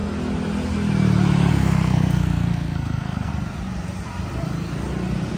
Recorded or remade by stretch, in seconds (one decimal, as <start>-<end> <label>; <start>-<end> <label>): 0.0-1.5 recorded; 1.5-3.3 remade; 3.3-5.4 recorded